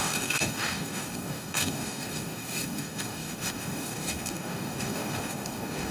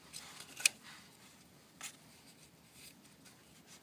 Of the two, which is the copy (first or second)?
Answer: first